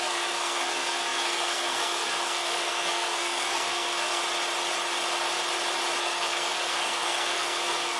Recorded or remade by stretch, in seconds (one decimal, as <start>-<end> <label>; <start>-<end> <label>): 0.0-4.2 remade; 4.2-6.0 recorded; 6.0-8.0 remade